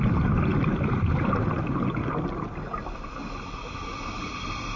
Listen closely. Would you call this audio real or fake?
real